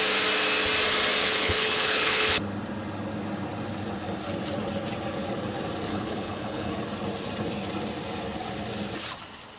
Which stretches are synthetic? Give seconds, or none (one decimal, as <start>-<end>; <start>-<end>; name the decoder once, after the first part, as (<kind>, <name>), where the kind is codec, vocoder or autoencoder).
1.2-2.4 (codec, HILCodec); 5.9-6.7